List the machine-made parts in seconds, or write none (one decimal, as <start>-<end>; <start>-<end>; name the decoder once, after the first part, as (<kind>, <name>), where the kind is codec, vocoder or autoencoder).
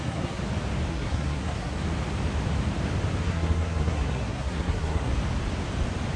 0.0-0.4 (codec, SNAC); 0.9-1.8; 3.2-5.1